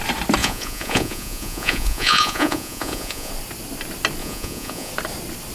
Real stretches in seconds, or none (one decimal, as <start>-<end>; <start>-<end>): 0.0-0.4; 3.3-4.2; 4.9-5.5